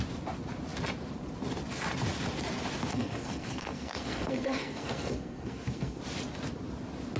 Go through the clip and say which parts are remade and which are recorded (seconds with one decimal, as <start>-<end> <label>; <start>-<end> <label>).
0.0-2.9 recorded; 2.9-6.0 remade; 6.0-7.2 recorded